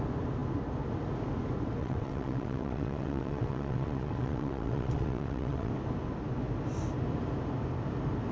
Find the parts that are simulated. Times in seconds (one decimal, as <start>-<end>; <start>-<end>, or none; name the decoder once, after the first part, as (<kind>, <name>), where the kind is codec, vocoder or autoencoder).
1.8-5.7 (vocoder, WaveNeXt)